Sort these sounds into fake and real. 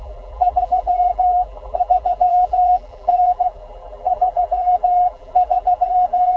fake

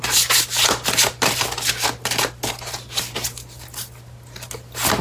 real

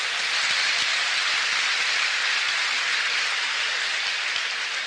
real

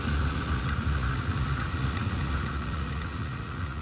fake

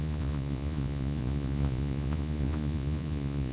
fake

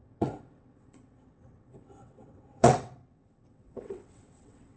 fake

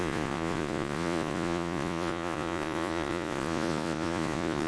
fake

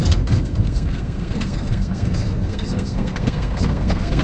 fake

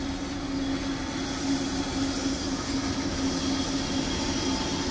real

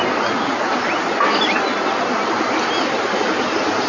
real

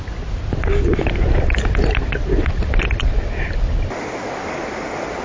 real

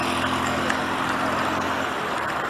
real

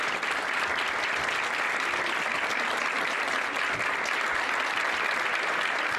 real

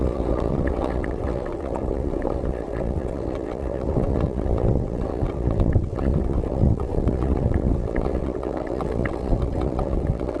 fake